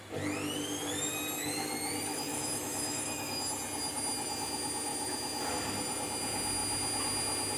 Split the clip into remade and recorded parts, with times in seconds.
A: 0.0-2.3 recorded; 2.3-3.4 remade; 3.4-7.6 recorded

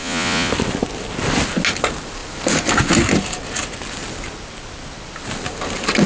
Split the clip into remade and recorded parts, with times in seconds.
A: 0.0-0.5 remade; 0.5-6.1 recorded

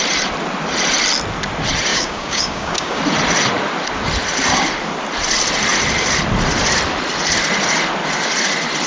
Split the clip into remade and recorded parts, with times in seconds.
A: 0.0-1.9 recorded; 1.9-3.0 remade; 3.0-8.9 recorded

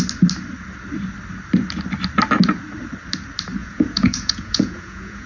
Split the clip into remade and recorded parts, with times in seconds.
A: 0.0-3.6 recorded; 3.6-5.3 remade